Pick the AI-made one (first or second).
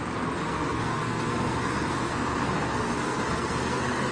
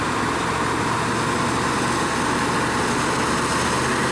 first